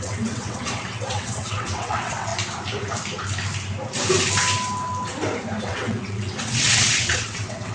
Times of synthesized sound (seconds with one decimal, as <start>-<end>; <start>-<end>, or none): 0.0-2.3; 5.6-7.7